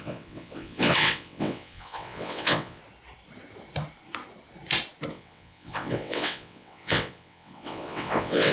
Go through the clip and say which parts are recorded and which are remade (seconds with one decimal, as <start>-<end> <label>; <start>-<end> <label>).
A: 0.0-2.8 remade; 2.8-5.1 recorded; 5.1-8.5 remade